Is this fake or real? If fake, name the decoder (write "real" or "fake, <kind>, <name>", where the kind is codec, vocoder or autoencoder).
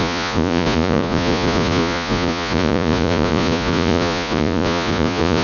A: fake, vocoder, Vocos